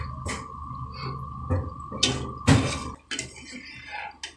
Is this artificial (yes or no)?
no